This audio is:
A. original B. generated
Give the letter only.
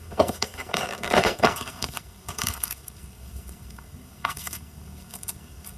B